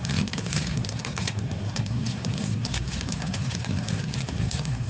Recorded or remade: remade